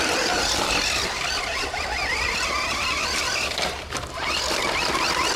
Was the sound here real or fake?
real